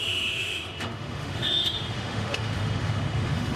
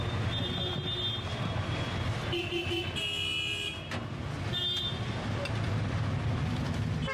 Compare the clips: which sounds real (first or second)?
second